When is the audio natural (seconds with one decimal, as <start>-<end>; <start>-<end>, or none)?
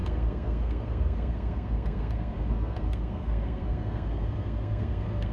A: none